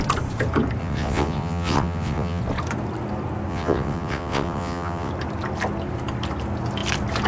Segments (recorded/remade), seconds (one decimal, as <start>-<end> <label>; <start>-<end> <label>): 0.0-0.8 recorded; 0.8-2.4 remade; 2.4-3.5 recorded; 3.5-5.1 remade; 5.1-7.3 recorded